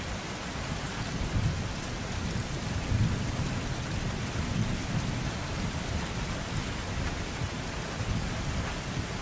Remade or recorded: remade